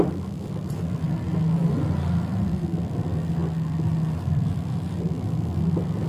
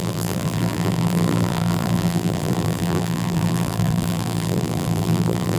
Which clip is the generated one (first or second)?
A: second